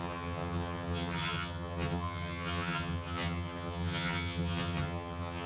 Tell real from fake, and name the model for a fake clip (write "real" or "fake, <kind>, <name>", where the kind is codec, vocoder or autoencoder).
fake, vocoder, HiFi-GAN